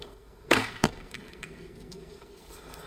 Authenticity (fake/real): fake